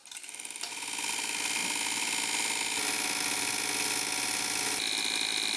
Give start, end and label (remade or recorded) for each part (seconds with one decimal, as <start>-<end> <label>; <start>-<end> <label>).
0.0-5.6 recorded